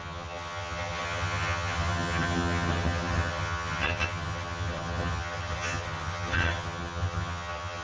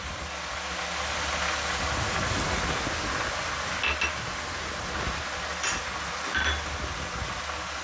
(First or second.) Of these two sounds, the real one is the second